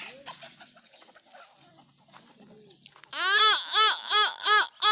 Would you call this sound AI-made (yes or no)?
no